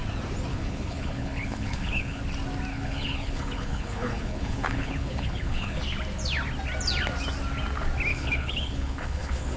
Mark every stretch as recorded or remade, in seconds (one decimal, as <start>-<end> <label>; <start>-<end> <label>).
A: 0.0-0.5 recorded; 0.5-2.2 remade; 2.2-2.7 recorded; 2.7-5.8 remade; 5.8-8.1 recorded; 8.1-9.6 remade